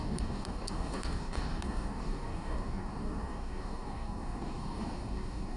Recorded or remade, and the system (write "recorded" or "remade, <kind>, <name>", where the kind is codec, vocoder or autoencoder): remade, codec, DAC